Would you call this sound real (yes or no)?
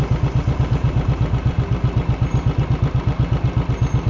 yes